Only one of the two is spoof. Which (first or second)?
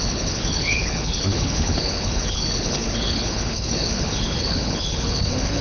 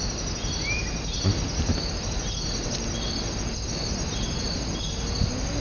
first